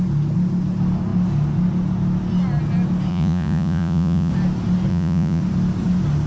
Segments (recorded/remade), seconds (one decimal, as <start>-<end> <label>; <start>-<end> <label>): 0.0-3.1 recorded; 3.1-4.3 remade; 4.3-4.9 recorded; 4.9-5.4 remade; 5.4-6.3 recorded